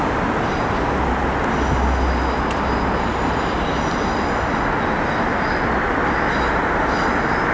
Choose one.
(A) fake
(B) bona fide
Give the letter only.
B